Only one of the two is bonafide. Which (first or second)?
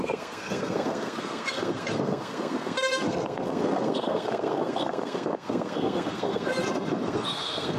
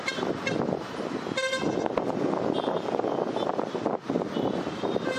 second